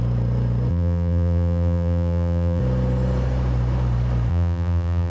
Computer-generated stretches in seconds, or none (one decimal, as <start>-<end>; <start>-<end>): 0.7-2.6; 4.3-5.1